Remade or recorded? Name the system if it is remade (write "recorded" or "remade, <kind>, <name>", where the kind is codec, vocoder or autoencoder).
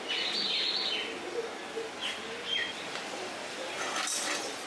recorded